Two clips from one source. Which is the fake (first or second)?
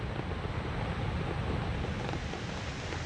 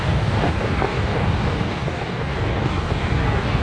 second